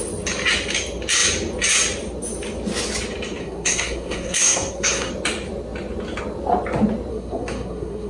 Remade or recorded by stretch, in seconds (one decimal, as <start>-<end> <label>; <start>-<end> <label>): 0.0-3.4 recorded; 3.4-5.1 remade; 5.1-7.1 recorded; 7.1-8.1 remade